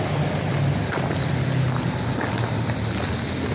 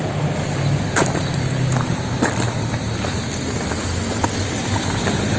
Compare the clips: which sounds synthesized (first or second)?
second